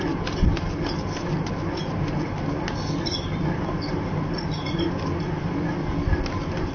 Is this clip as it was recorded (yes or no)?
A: yes